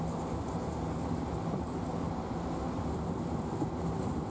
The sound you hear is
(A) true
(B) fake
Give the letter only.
A